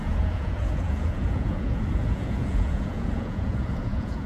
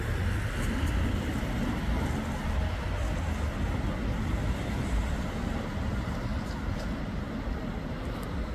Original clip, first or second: second